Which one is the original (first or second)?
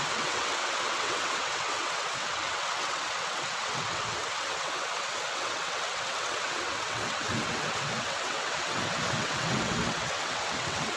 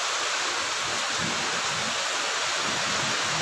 second